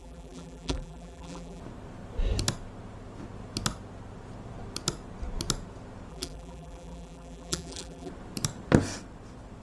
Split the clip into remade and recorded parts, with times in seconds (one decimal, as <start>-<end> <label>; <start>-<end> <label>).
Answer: 0.0-1.6 remade; 1.6-6.1 recorded; 6.1-8.1 remade; 8.1-9.6 recorded